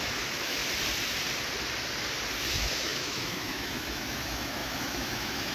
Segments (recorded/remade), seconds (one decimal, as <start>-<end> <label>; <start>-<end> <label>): 0.0-0.6 remade; 0.6-2.5 recorded; 2.5-5.5 remade